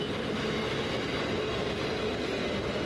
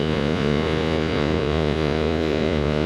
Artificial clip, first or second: second